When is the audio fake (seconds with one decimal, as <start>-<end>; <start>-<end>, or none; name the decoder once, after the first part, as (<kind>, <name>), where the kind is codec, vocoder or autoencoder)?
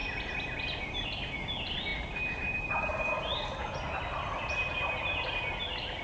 none